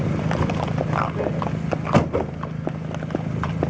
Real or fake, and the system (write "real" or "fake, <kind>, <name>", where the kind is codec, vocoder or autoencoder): real